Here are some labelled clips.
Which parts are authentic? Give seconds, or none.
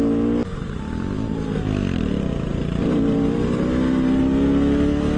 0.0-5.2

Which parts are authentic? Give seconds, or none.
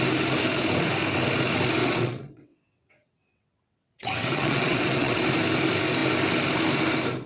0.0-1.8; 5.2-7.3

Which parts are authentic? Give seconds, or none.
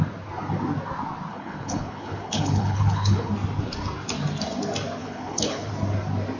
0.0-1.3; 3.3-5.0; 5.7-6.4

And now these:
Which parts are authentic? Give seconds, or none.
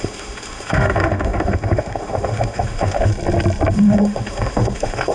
3.1-3.7